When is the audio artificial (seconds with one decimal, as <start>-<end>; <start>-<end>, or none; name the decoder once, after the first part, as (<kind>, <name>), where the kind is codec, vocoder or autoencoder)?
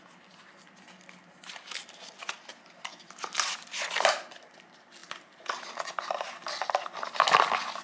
2.5-4.1 (vocoder, BigVGAN v2); 5.0-6.3